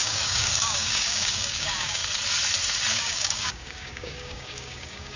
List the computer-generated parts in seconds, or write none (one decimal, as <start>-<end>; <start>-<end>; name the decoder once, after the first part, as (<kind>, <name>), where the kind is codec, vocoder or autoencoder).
0.0-2.0 (codec, DAC); 2.9-5.2